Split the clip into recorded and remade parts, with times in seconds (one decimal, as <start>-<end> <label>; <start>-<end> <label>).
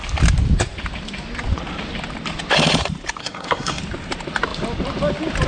0.0-3.2 recorded; 3.2-3.8 remade; 3.8-5.5 recorded